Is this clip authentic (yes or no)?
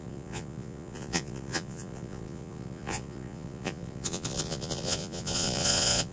no